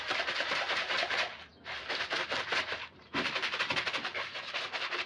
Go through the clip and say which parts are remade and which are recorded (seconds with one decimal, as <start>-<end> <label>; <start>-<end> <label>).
0.0-4.1 remade; 4.1-5.1 recorded